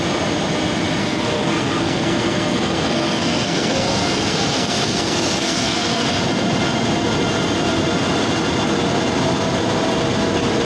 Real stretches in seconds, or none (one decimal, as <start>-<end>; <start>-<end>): 0.0-1.0; 6.2-10.6